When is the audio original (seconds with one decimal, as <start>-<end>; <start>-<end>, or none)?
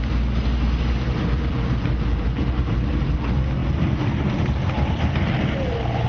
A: 0.0-6.1